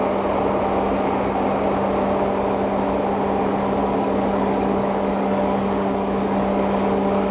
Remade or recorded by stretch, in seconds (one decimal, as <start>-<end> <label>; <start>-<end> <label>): 0.0-3.8 recorded; 3.8-7.3 remade